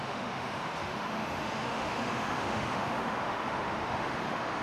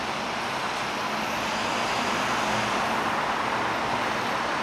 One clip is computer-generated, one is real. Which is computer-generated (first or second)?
first